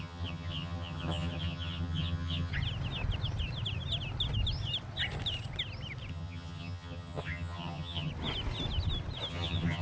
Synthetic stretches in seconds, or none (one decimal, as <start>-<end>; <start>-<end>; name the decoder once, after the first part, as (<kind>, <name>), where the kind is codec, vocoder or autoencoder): 0.0-2.5 (vocoder, HiFi-GAN); 6.1-8.1; 9.3-9.8